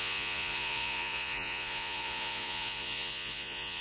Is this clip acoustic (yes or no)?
no